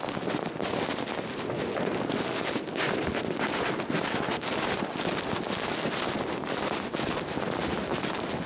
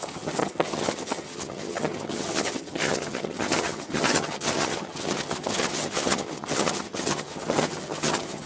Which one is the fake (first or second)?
second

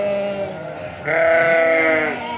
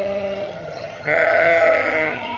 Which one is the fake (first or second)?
second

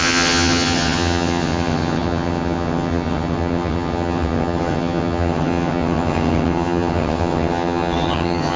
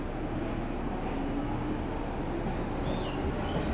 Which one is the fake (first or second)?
first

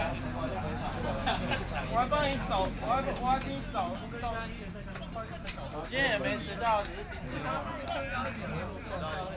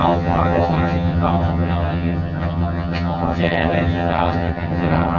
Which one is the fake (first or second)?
second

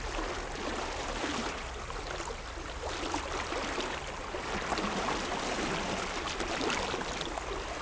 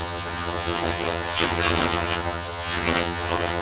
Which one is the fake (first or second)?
second